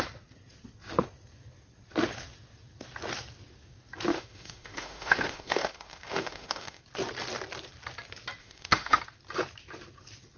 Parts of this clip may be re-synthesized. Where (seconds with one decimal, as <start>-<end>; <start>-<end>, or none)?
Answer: 4.1-6.8; 8.4-9.0